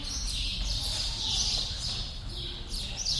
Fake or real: real